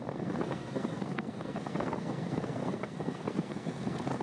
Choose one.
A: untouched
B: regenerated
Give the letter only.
B